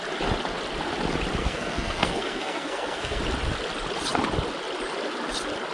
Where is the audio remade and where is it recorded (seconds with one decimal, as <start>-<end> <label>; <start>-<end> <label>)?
0.0-1.4 recorded; 1.4-3.2 remade; 3.2-5.7 recorded